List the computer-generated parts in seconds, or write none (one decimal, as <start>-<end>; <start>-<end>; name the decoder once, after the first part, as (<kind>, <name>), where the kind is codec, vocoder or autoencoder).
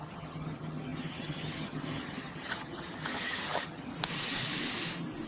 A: 0.0-3.9 (vocoder, HiFi-GAN)